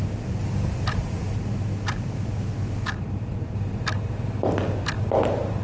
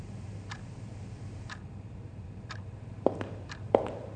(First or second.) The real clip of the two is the first